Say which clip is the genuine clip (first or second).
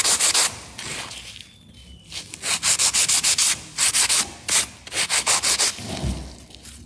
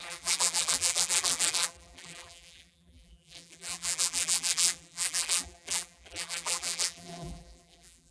first